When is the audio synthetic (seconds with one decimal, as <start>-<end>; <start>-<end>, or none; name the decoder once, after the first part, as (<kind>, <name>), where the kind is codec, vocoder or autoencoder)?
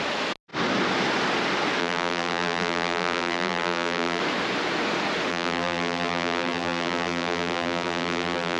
1.8-4.2 (vocoder, BigVGAN v2); 5.3-8.6